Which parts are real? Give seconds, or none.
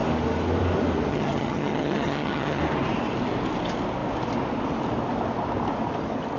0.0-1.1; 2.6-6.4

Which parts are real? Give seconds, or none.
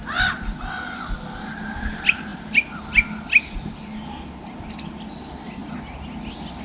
0.0-6.6